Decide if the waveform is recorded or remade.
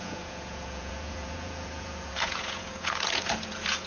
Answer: remade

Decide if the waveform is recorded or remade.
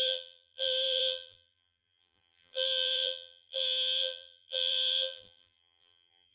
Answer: remade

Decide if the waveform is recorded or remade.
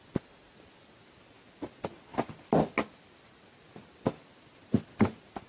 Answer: recorded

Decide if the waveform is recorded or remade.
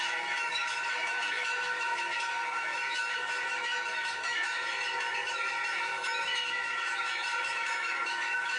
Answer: remade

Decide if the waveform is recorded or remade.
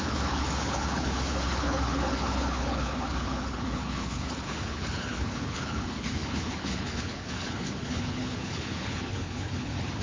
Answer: remade